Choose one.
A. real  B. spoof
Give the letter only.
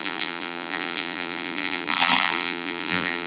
B